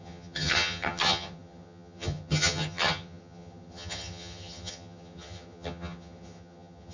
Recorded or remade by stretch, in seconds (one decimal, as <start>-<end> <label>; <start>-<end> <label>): 0.0-6.9 remade